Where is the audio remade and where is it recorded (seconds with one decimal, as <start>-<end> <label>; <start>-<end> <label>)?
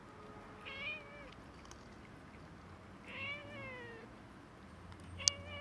0.0-5.6 recorded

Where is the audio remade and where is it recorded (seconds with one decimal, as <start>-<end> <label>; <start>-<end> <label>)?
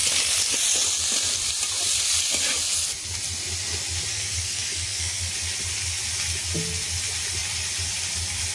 0.0-4.1 recorded; 4.1-5.2 remade; 5.2-8.5 recorded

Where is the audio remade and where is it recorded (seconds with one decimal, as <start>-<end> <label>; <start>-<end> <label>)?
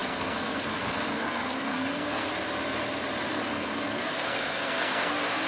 0.0-2.3 remade; 2.3-3.3 recorded; 3.3-5.1 remade; 5.1-5.5 recorded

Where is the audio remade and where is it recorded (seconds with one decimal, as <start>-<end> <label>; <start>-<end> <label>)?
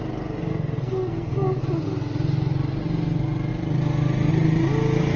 0.0-0.5 recorded; 0.5-1.6 remade; 1.6-5.2 recorded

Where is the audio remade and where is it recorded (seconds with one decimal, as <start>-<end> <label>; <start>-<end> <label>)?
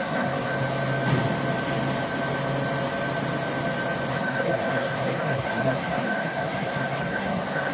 0.0-0.5 remade; 0.5-4.1 recorded; 4.1-7.7 remade